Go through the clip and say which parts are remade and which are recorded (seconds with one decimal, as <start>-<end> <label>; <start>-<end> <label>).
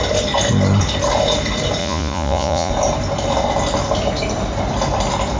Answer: 0.0-1.8 recorded; 1.8-2.7 remade; 2.7-5.4 recorded